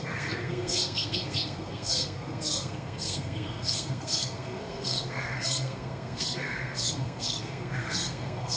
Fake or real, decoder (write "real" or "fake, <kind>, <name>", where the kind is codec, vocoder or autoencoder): fake, codec, SNAC